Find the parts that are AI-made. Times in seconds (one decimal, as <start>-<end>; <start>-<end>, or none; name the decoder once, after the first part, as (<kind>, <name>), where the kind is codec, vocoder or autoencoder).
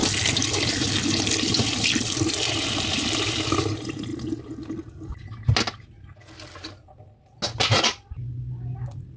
none